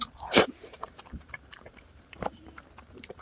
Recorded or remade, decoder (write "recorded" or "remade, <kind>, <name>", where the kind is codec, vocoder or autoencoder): remade, vocoder, BigVGAN v2